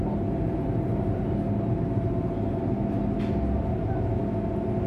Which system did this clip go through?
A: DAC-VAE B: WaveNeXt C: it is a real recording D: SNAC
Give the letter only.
C